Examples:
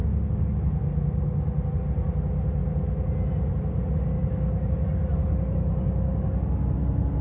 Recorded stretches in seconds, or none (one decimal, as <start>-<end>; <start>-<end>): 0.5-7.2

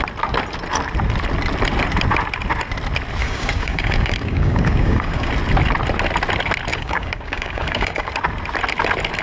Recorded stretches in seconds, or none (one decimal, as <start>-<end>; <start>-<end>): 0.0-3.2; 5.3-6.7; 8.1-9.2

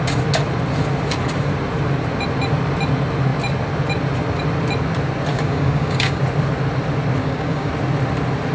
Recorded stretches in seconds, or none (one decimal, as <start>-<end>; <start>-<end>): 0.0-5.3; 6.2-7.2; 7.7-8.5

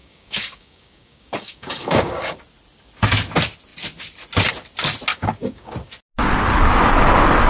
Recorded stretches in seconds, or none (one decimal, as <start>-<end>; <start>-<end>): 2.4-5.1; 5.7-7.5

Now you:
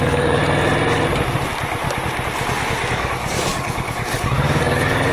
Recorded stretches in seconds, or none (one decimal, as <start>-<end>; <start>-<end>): 0.4-2.9

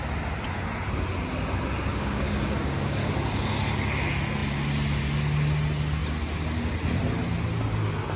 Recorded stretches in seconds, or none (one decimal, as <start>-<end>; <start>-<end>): 0.0-1.9; 3.1-8.2

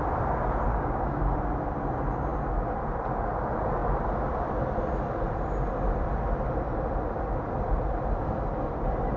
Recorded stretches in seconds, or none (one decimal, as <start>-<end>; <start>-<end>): 0.0-0.7; 1.2-9.2